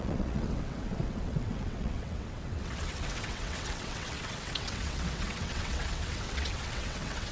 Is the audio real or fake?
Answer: fake